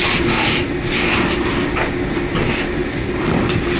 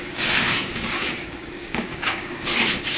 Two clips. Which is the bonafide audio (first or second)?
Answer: first